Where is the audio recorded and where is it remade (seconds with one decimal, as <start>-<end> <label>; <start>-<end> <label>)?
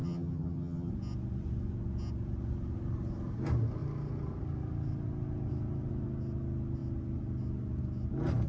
0.0-0.9 remade; 0.9-8.5 recorded